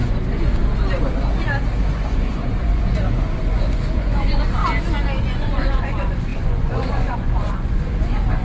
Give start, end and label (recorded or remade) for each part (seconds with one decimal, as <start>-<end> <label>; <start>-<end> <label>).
0.0-0.6 remade; 0.6-1.9 recorded; 1.9-4.6 remade; 4.6-5.2 recorded; 5.2-8.4 remade